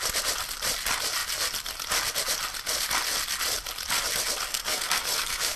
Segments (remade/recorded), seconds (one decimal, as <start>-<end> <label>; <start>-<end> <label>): 0.0-4.5 recorded; 4.5-5.6 remade

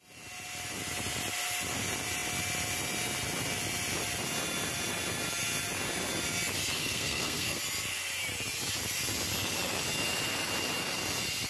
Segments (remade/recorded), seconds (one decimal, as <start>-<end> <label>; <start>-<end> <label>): 0.0-6.8 recorded; 6.8-7.6 remade; 7.6-11.5 recorded

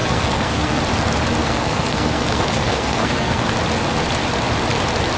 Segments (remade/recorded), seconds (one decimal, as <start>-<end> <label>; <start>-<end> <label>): 0.0-0.8 remade; 0.8-1.4 recorded; 1.4-3.5 remade; 3.5-5.2 recorded

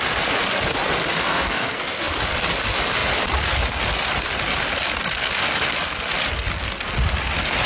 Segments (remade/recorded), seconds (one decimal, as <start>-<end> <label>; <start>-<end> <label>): 0.0-1.3 recorded; 1.3-2.1 remade; 2.1-7.7 recorded

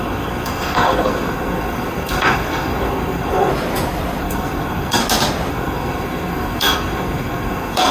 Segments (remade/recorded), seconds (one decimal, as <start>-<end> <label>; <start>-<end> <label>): 0.0-3.5 remade; 3.5-4.2 recorded; 4.2-5.0 remade; 5.0-5.5 recorded; 5.5-7.9 remade

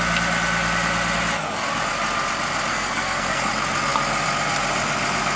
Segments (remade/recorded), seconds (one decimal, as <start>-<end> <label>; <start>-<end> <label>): 0.0-2.7 recorded; 2.7-3.5 remade; 3.5-5.4 recorded